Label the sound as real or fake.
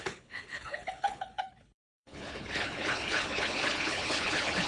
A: fake